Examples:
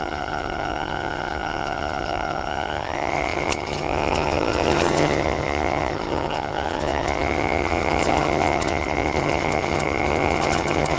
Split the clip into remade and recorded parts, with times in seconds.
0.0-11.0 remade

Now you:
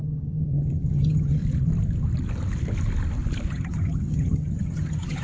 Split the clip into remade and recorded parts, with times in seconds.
0.0-1.4 remade; 1.4-3.5 recorded; 3.5-5.2 remade

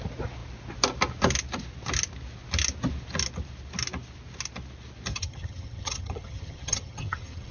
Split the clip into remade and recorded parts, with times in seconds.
0.0-5.1 recorded; 5.1-7.5 remade

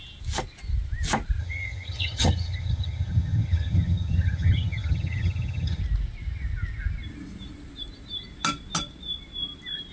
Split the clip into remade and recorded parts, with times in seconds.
0.0-1.4 recorded; 1.4-5.8 remade; 5.8-9.9 recorded